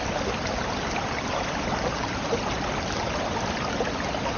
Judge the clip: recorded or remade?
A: recorded